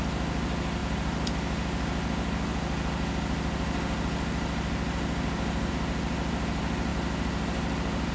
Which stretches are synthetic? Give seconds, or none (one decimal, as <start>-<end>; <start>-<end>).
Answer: none